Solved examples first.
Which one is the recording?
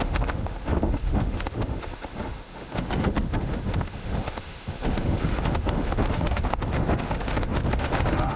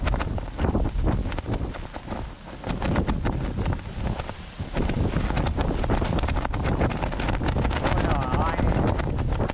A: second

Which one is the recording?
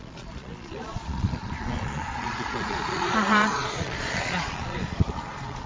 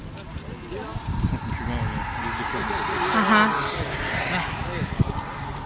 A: second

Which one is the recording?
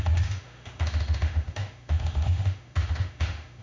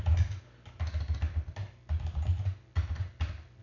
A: second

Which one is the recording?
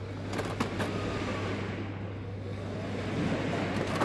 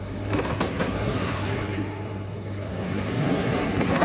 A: first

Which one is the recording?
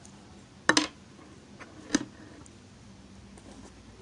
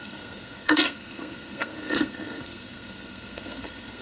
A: first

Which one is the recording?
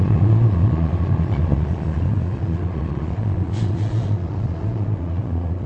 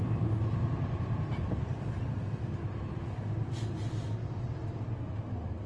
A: second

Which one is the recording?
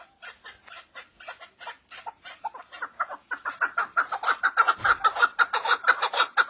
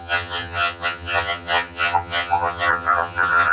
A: first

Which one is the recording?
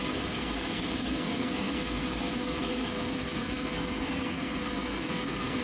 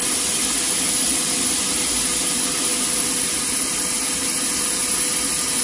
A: second